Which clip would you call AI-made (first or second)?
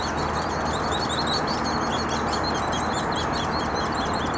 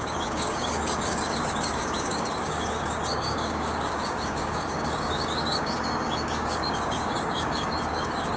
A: second